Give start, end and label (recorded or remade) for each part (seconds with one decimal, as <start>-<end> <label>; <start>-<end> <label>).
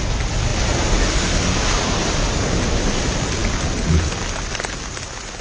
0.0-5.4 recorded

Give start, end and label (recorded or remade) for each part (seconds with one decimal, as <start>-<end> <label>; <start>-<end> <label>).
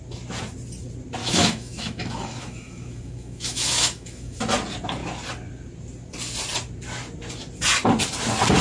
0.0-1.2 recorded; 1.2-4.4 remade; 4.4-8.6 recorded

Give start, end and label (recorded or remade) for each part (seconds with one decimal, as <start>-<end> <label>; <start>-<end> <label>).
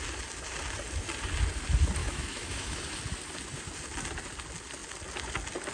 0.0-2.0 recorded; 2.0-2.8 remade; 2.8-5.7 recorded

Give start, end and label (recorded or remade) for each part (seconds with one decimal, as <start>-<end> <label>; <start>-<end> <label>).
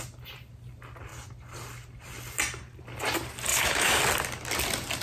0.0-3.5 recorded; 3.5-4.0 remade; 4.0-5.0 recorded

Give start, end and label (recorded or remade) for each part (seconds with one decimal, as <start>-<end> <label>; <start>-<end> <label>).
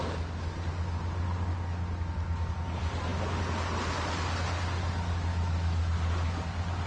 0.0-5.3 recorded; 5.3-5.9 remade; 5.9-6.9 recorded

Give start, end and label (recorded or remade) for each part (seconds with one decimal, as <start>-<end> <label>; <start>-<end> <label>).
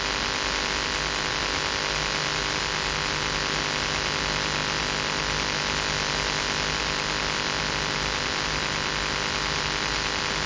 0.0-10.5 recorded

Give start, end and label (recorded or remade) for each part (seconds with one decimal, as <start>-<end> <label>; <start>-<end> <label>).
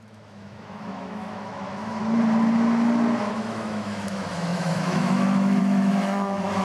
0.0-2.0 remade; 2.0-3.2 recorded; 3.2-6.6 remade